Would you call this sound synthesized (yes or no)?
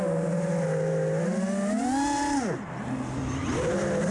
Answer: no